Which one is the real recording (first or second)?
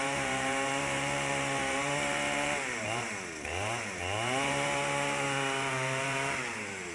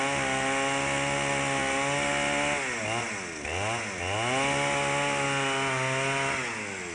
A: second